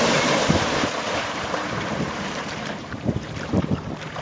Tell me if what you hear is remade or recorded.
remade